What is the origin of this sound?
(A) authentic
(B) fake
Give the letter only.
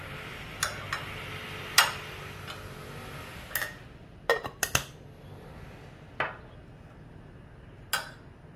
A